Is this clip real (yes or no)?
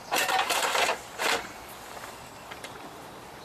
no